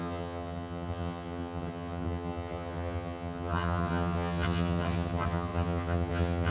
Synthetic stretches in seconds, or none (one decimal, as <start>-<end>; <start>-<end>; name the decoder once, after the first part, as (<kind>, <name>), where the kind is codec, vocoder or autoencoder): 0.0-6.5 (vocoder, HiFi-GAN)